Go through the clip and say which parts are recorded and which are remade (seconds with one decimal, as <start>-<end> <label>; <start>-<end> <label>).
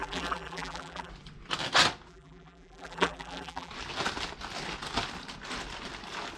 0.0-1.1 remade; 1.1-2.1 recorded; 2.1-3.7 remade; 3.7-6.4 recorded